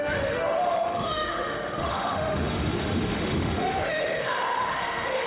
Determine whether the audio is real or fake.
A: fake